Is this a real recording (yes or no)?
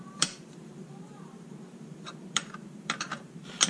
no